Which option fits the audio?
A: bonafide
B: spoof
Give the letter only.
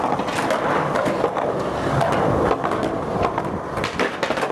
A